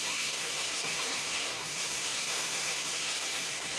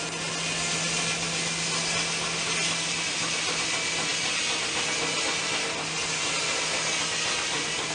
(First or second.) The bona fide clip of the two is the second